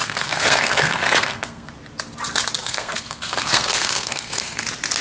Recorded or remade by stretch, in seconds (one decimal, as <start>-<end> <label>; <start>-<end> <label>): 0.0-1.7 remade; 1.7-2.6 recorded; 2.6-4.6 remade; 4.6-5.0 recorded